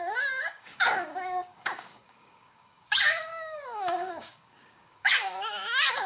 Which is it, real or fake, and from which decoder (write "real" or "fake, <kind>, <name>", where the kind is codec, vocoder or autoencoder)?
fake, codec, DAC